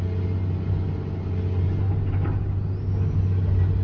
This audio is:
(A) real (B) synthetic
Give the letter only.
A